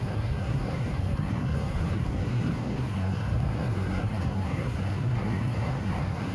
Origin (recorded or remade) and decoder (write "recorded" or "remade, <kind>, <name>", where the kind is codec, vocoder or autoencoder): remade, codec, SNAC